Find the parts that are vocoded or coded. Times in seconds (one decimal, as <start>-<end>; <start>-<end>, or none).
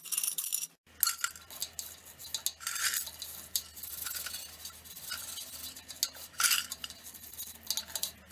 none